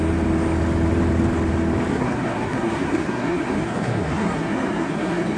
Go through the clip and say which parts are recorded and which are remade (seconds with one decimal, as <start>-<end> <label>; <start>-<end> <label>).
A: 0.0-1.9 recorded; 1.9-5.4 remade